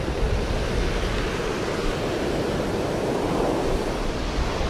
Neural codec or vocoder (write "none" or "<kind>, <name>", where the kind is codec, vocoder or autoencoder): none